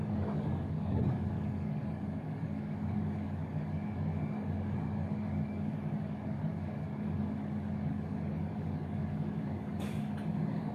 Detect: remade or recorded remade